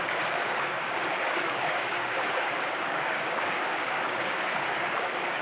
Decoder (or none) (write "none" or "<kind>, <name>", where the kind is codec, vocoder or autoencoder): codec, DAC